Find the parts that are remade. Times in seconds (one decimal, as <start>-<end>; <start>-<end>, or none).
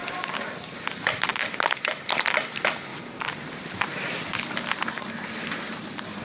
0.0-0.8; 2.9-3.8